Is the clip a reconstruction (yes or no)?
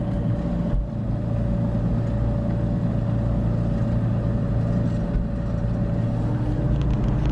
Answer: no